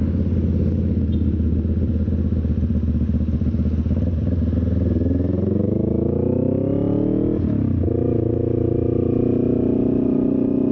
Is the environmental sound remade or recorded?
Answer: recorded